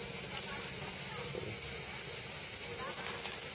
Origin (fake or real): real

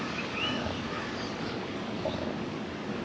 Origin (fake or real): fake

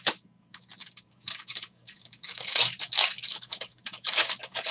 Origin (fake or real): fake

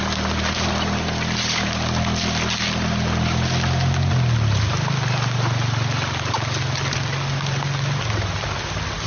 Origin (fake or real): real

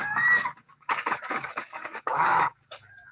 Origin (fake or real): fake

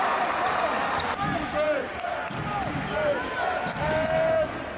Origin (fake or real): real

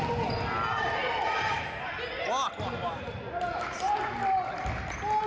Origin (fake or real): real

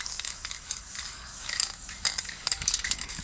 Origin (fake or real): fake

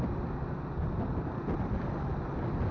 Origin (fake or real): real